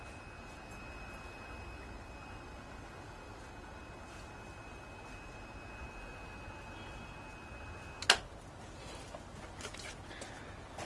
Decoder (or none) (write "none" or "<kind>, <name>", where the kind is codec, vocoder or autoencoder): none